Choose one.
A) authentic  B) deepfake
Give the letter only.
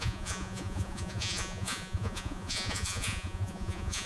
B